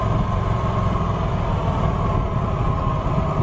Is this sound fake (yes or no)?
no